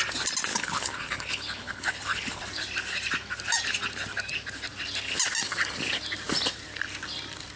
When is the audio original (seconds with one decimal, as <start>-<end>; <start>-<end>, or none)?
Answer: 0.0-0.5; 2.4-7.6